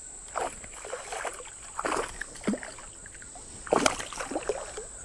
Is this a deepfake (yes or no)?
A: no